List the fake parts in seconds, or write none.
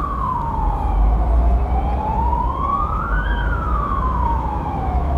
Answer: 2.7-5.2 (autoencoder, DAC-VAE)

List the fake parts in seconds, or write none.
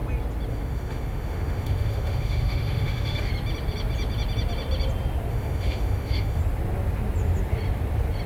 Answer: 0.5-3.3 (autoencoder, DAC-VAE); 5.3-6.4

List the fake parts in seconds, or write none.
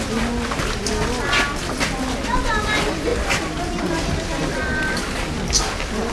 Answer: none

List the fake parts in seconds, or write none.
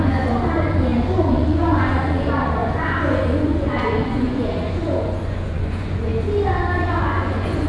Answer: 0.0-6.1 (vocoder, Vocos); 6.9-7.7